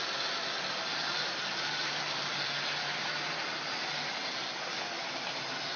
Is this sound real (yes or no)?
yes